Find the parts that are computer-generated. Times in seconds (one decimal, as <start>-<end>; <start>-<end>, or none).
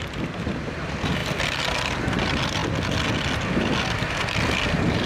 none